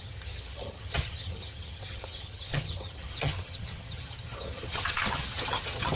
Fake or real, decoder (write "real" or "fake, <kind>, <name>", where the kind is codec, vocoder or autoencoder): fake, vocoder, HiFi-GAN